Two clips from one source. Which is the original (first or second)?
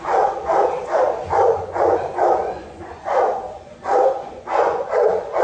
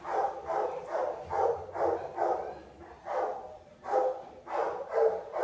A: second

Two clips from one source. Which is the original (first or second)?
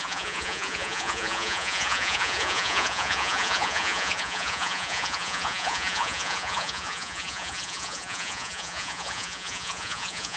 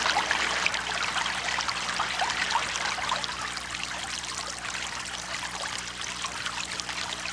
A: second